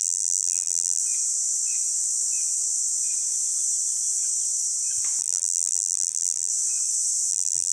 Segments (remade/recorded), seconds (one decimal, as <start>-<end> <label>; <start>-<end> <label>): 0.0-1.0 remade; 1.0-5.2 recorded; 5.2-6.5 remade; 6.5-7.3 recorded; 7.3-7.7 remade